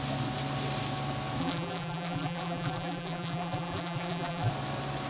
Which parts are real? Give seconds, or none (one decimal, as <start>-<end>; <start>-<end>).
0.0-1.4; 4.5-5.1